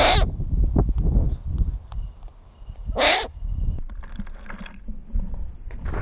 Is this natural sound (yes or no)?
no